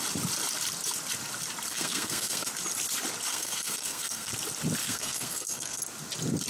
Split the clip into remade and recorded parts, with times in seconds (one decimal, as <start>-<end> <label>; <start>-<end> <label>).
0.0-1.7 recorded; 1.7-2.5 remade; 2.5-3.3 recorded; 3.3-4.3 remade; 4.3-4.8 recorded; 4.8-5.8 remade; 5.8-6.5 recorded

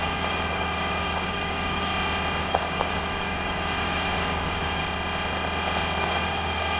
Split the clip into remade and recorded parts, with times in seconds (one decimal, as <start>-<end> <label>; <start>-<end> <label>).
0.0-1.9 remade; 1.9-2.4 recorded; 2.4-4.8 remade; 4.8-6.0 recorded; 6.0-6.8 remade

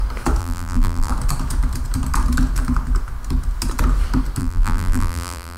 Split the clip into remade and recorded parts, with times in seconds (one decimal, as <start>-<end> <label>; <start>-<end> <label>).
0.0-0.4 recorded; 0.4-1.1 remade; 1.1-4.4 recorded; 4.4-5.6 remade

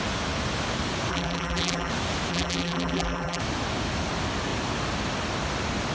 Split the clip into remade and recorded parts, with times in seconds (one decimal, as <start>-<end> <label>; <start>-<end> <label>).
0.0-1.1 recorded; 1.1-1.9 remade; 1.9-2.3 recorded; 2.3-3.4 remade; 3.4-5.9 recorded

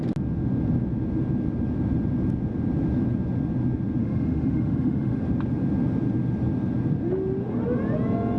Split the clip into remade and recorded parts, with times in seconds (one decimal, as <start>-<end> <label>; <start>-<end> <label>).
0.0-4.0 recorded; 4.0-5.2 remade; 5.2-8.4 recorded